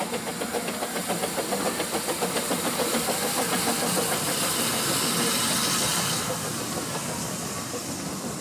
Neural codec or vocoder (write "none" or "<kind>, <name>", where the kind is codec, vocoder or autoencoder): none